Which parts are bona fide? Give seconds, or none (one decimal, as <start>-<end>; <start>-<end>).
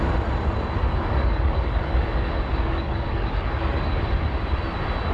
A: 0.0-0.9; 4.0-5.1